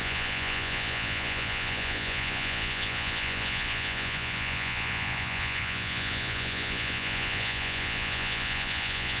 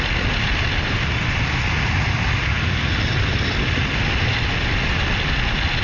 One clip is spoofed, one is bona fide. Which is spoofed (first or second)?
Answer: first